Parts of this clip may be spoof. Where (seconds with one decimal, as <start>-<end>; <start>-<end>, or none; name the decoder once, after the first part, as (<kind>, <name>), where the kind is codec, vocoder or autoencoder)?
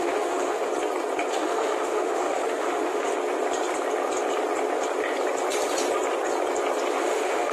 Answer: 0.0-0.7 (autoencoder, DAC-VAE); 1.3-3.1; 7.0-7.5